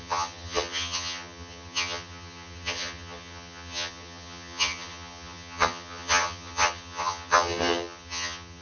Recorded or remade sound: remade